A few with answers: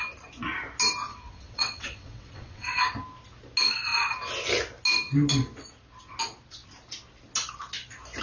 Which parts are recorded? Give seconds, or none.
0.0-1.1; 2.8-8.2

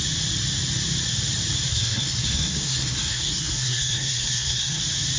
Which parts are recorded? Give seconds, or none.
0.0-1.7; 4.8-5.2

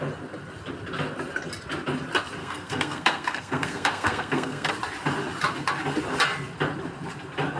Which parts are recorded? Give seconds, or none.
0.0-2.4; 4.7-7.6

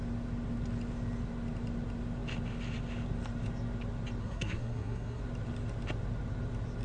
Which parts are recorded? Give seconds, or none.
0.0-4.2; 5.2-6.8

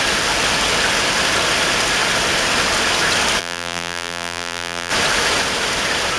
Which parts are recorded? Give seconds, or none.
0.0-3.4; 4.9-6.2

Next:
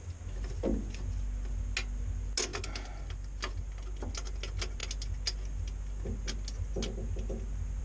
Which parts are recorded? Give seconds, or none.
0.0-7.8

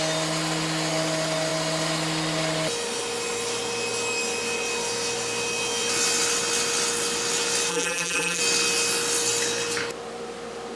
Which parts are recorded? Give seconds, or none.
0.0-7.7; 8.4-10.8